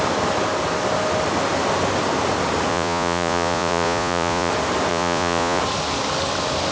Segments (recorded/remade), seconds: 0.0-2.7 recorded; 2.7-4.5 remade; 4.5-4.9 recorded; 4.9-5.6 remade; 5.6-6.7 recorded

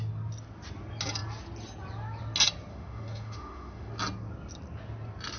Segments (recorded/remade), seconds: 0.0-2.7 recorded; 2.7-3.9 remade; 3.9-5.4 recorded

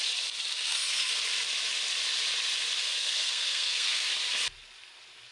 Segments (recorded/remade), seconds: 0.0-0.5 recorded; 0.5-1.1 remade; 1.1-2.9 recorded; 2.9-4.1 remade; 4.1-5.3 recorded

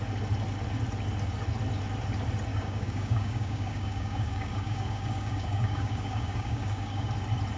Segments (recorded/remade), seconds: 0.0-2.5 recorded; 2.5-7.1 remade; 7.1-7.6 recorded

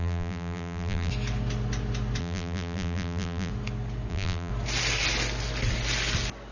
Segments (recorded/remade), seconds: 0.0-1.1 remade; 1.1-2.2 recorded; 2.2-3.5 remade; 3.5-4.1 recorded; 4.1-4.5 remade; 4.5-6.5 recorded

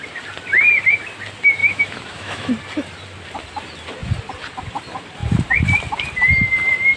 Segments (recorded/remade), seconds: 0.0-1.6 recorded; 1.6-2.5 remade; 2.5-7.0 recorded

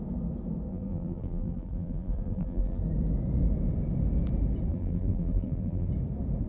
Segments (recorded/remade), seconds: 0.0-0.7 recorded; 0.7-2.8 remade; 2.8-4.7 recorded; 4.7-5.9 remade; 5.9-6.5 recorded

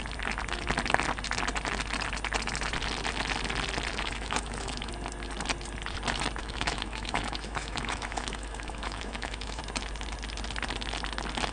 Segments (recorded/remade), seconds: 0.0-3.9 recorded; 3.9-4.9 remade; 4.9-6.4 recorded; 6.4-9.6 remade; 9.6-11.5 recorded